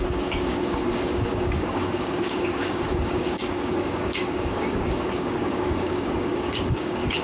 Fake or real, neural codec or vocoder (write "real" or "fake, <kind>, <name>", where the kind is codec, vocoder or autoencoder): fake, codec, DAC